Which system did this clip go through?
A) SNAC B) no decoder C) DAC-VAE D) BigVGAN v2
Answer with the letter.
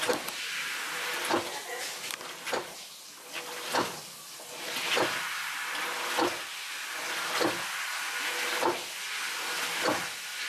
B